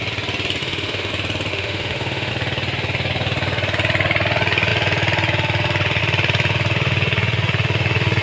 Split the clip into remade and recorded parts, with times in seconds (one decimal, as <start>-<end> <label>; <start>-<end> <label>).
0.0-0.6 recorded; 0.6-1.1 remade; 1.1-1.5 recorded; 1.5-2.3 remade; 2.3-8.2 recorded